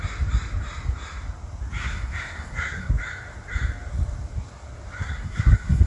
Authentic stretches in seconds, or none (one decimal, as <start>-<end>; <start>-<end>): 0.0-1.8; 2.9-5.0